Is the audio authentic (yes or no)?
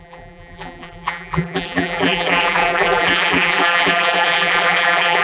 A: no